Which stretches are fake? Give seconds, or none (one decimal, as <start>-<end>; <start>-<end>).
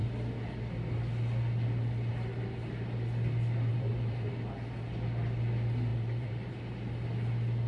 3.7-4.3; 5.9-6.5